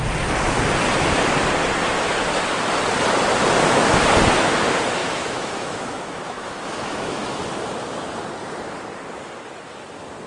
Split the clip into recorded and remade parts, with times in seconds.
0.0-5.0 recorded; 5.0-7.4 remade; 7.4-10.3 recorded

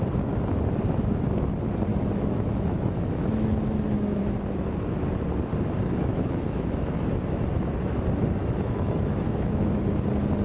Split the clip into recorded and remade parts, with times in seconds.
0.0-1.9 recorded; 1.9-4.2 remade; 4.2-6.0 recorded; 6.0-7.6 remade; 7.6-8.4 recorded; 8.4-9.8 remade; 9.8-10.4 recorded